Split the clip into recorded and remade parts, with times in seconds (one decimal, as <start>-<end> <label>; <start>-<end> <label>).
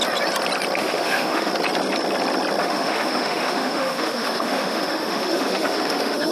0.0-0.8 recorded; 0.8-1.5 remade; 1.5-2.6 recorded; 2.6-6.3 remade